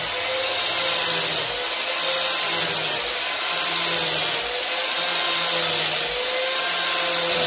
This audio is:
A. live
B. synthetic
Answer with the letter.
A